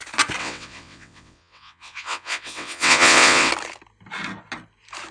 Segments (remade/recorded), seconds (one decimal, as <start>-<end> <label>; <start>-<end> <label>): 0.0-0.4 recorded; 0.4-3.5 remade; 3.5-5.1 recorded